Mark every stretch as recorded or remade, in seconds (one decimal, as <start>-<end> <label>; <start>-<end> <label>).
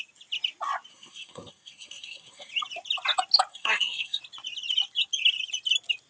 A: 0.0-0.9 recorded; 0.9-2.5 remade; 2.5-3.5 recorded; 3.5-4.2 remade; 4.2-6.1 recorded